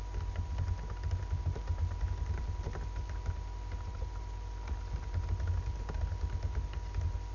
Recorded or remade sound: recorded